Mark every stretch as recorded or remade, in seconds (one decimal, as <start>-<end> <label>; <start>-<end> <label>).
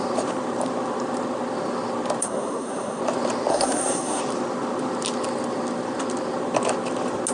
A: 0.0-2.2 recorded; 2.2-3.0 remade; 3.0-3.5 recorded; 3.5-4.2 remade; 4.2-7.3 recorded